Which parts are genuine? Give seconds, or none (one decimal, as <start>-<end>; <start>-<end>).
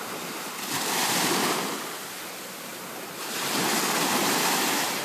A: 0.0-4.2